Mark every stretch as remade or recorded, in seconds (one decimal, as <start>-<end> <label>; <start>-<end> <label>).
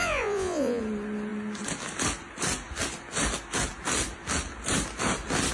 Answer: 0.0-0.8 remade; 0.8-5.5 recorded